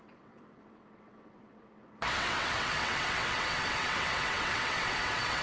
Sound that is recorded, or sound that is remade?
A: remade